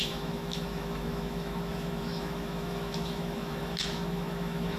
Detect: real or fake fake